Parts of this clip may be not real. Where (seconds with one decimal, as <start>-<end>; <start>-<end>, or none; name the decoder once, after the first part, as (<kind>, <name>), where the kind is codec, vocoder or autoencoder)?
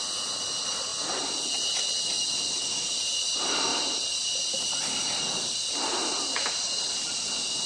none